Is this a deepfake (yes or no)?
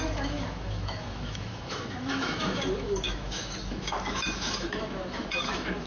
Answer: yes